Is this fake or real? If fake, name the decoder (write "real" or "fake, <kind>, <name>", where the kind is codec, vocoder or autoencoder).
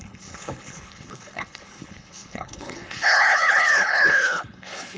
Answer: fake, codec, HILCodec